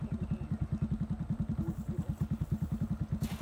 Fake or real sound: real